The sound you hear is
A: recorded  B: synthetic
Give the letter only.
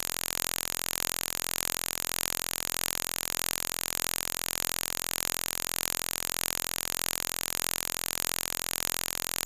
A